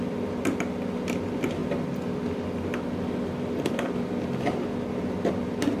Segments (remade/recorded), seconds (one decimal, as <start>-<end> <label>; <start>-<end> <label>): 0.0-5.8 recorded